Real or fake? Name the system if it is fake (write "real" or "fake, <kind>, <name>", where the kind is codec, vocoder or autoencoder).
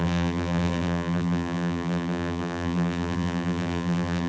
fake, vocoder, BigVGAN v2